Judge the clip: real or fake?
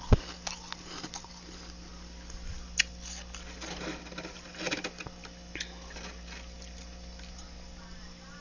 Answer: real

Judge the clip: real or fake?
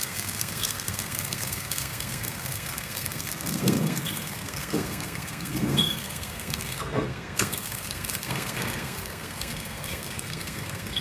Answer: fake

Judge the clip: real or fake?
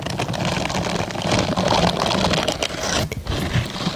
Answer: real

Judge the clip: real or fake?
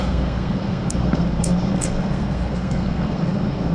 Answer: fake